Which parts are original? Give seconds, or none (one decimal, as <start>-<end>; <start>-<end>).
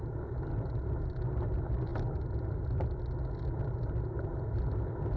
0.0-5.2